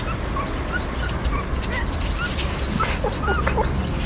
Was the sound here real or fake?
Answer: real